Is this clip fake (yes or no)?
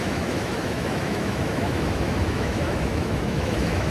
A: yes